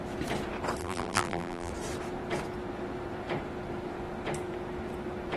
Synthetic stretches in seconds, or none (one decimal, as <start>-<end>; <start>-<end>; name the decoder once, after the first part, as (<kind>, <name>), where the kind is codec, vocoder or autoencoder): 0.8-1.7 (vocoder, BigVGAN v2)